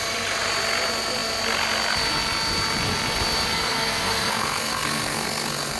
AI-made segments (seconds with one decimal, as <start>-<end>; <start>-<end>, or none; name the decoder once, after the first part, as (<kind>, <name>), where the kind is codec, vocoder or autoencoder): 3.5-5.8 (codec, SNAC)